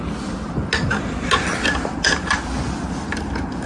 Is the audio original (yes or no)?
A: yes